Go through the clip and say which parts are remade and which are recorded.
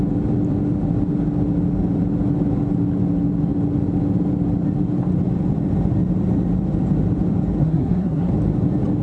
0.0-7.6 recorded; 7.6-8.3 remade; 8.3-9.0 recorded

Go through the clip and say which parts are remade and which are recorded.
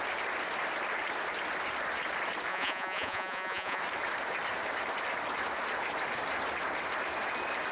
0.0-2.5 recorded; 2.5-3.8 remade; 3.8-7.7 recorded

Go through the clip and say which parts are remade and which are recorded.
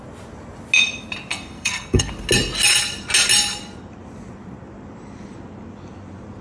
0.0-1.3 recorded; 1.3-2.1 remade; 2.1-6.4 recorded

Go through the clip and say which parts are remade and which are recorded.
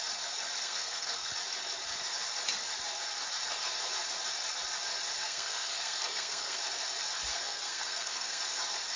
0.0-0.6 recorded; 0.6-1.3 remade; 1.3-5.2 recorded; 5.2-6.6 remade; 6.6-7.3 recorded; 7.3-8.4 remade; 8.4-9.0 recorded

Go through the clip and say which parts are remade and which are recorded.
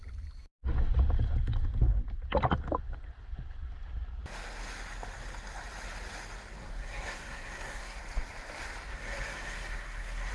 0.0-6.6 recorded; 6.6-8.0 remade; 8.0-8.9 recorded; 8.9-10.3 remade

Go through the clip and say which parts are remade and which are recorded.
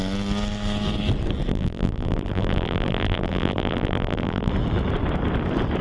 0.0-1.5 recorded; 1.5-4.5 remade; 4.5-5.8 recorded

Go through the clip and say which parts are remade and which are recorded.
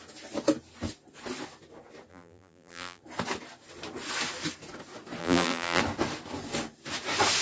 0.0-2.1 recorded; 2.1-3.0 remade; 3.0-5.2 recorded; 5.2-5.8 remade; 5.8-7.4 recorded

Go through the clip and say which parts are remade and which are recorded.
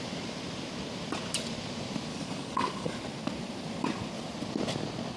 0.0-2.1 recorded; 2.1-2.9 remade; 2.9-5.2 recorded